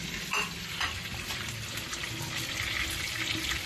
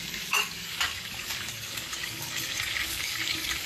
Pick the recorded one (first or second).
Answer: first